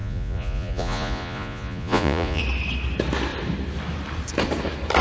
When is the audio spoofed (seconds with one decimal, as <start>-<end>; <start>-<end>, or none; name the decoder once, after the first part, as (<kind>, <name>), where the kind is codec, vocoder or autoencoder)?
0.0-2.4 (vocoder, Vocos)